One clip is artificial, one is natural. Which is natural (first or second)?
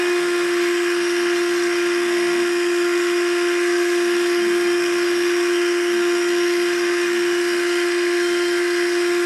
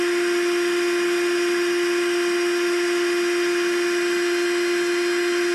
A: second